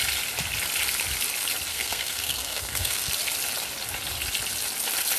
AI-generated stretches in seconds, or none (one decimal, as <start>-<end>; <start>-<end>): 1.7-3.1

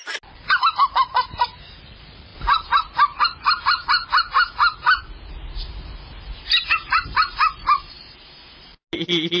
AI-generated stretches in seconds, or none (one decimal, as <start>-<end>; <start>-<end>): none

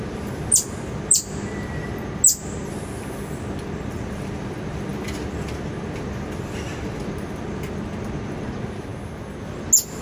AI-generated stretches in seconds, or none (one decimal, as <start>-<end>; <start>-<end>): none

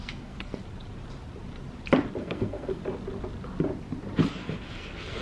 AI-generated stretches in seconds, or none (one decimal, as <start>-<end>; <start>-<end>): 0.0-0.6; 2.2-2.8; 4.3-5.2

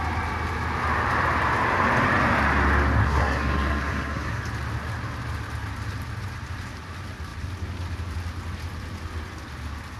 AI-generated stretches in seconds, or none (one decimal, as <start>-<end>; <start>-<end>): 3.0-4.4

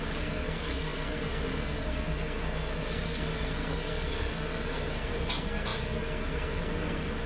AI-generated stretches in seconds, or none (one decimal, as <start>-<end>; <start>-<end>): 0.0-7.3